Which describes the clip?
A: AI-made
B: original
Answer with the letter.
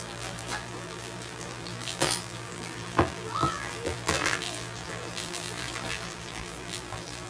A